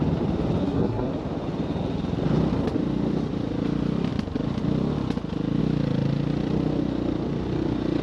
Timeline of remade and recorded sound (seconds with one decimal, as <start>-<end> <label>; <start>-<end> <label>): 0.0-0.6 recorded; 0.6-1.1 remade; 1.1-8.0 recorded